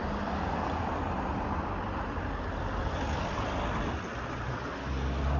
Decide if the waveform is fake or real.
real